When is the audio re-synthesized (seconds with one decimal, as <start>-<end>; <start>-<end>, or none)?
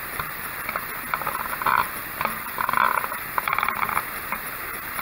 none